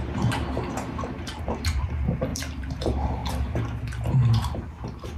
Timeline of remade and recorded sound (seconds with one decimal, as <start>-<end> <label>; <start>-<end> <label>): 0.0-3.2 remade; 3.2-4.1 recorded; 4.1-5.2 remade